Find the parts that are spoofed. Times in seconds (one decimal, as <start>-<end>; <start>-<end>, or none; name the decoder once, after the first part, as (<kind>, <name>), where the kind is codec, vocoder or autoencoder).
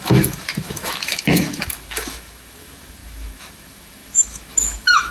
0.0-5.1 (autoencoder, DAC-VAE)